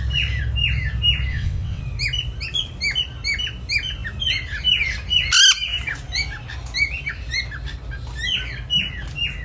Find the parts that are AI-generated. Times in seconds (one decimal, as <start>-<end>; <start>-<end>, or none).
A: 1.3-1.8